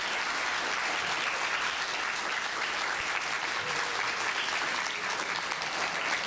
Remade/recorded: recorded